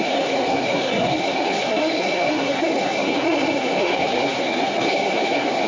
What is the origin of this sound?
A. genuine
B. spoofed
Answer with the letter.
B